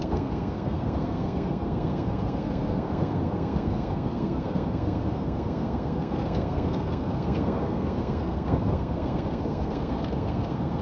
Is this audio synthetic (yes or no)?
yes